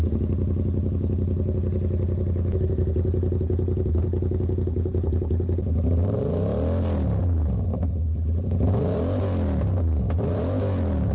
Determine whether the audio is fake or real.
real